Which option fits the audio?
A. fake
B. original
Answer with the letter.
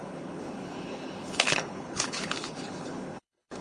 A